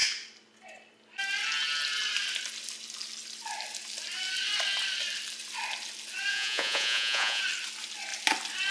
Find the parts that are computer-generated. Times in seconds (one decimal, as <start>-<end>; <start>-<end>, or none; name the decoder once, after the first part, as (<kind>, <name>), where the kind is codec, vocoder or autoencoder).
6.3-7.4 (vocoder, Vocos)